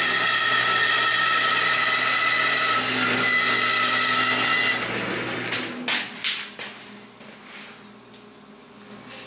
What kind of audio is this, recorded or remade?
recorded